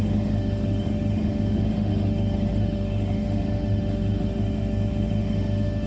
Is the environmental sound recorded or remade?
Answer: remade